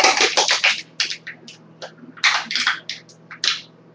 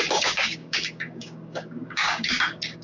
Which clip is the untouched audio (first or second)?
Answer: first